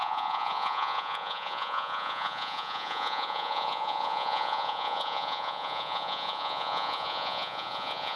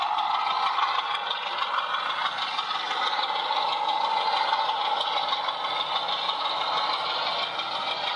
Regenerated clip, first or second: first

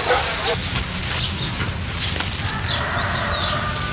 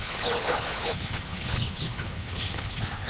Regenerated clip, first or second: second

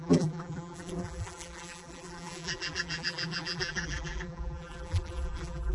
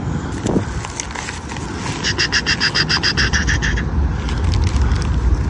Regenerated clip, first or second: first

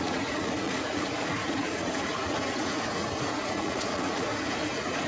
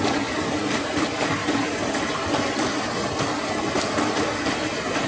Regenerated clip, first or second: first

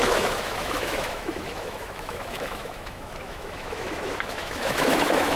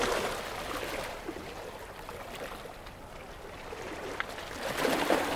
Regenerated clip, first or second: first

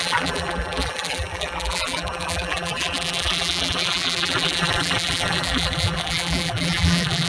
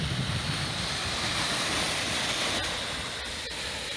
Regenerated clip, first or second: first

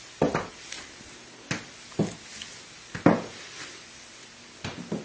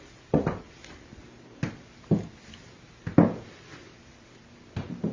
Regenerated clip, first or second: second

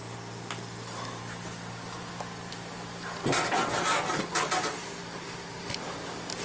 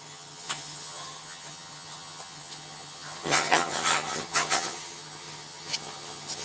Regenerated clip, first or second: second